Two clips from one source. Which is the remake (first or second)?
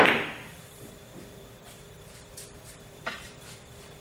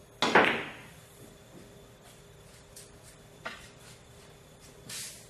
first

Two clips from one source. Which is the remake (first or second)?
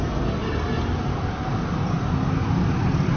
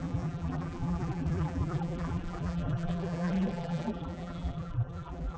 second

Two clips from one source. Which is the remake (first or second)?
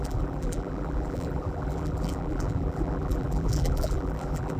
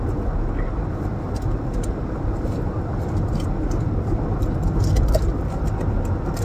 first